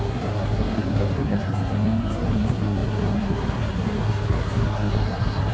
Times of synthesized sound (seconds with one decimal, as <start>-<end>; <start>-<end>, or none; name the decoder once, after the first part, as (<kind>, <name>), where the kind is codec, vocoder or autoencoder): 0.0-5.5 (codec, SNAC)